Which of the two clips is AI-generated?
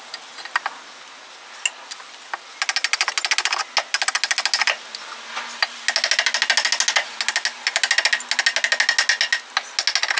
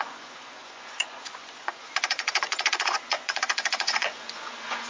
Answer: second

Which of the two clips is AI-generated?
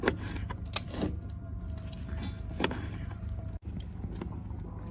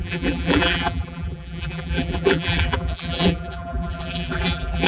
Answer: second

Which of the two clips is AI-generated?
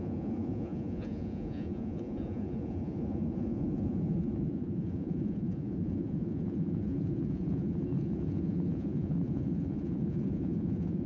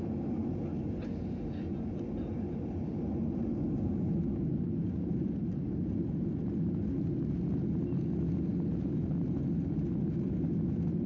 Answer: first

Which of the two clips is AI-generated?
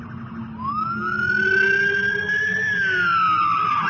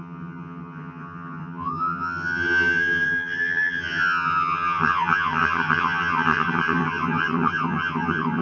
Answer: second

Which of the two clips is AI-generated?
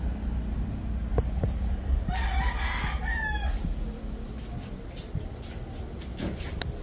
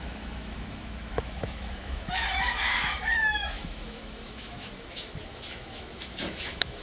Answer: second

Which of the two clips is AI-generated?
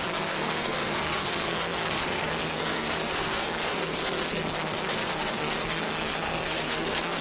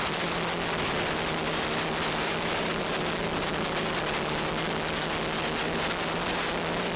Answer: first